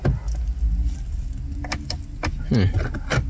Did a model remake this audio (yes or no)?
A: no